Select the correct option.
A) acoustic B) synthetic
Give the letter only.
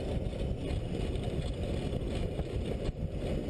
A